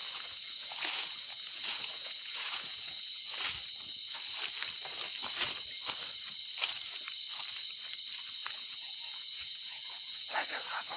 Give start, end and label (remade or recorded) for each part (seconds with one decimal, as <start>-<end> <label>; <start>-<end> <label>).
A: 0.0-3.4 remade; 3.4-8.4 recorded; 8.4-11.0 remade